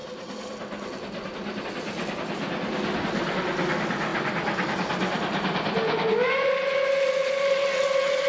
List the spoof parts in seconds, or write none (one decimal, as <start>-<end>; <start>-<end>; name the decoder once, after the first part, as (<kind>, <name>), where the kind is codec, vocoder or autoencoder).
none